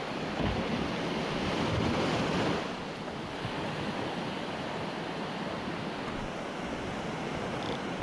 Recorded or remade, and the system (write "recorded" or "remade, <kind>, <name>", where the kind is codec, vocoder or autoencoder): recorded